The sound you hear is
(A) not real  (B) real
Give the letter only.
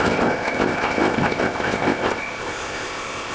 A